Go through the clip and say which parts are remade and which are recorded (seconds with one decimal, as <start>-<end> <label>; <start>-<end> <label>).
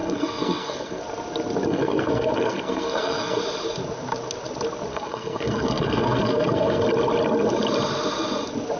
0.0-1.0 remade; 1.0-1.7 recorded; 1.7-3.4 remade; 3.4-4.9 recorded; 4.9-6.8 remade; 6.8-8.8 recorded